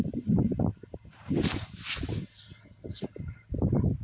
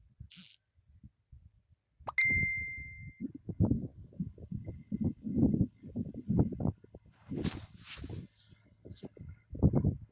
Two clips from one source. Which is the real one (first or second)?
second